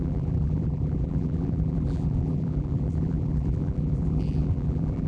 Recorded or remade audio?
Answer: remade